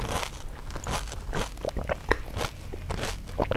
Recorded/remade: recorded